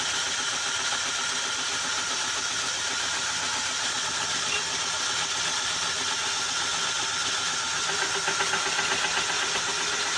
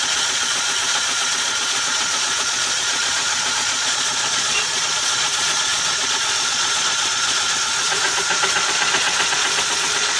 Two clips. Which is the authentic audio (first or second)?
first